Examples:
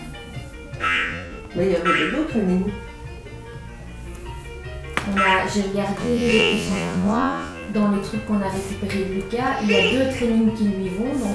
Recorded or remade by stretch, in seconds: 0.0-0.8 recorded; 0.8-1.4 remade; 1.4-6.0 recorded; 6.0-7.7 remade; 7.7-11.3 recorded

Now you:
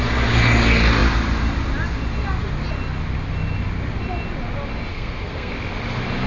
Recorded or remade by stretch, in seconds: 0.0-4.9 recorded; 4.9-5.5 remade; 5.5-6.3 recorded